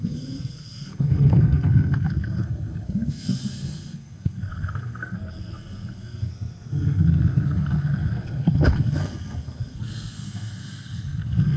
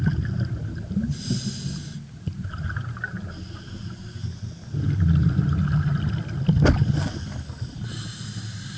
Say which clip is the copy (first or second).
first